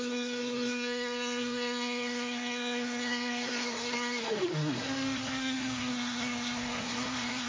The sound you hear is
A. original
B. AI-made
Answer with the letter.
B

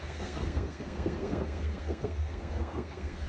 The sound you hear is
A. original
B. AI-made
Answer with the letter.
B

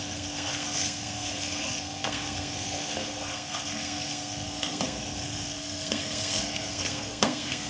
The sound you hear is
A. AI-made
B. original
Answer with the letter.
A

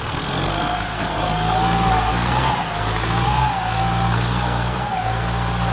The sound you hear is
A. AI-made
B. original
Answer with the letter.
A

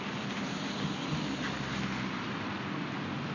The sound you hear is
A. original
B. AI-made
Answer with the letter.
A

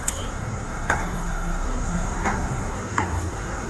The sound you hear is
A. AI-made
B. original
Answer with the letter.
A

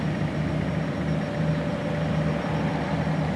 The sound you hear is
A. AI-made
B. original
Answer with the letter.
B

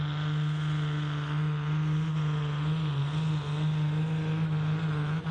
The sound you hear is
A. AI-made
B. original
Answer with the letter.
B